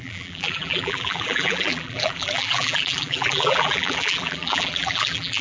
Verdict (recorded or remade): remade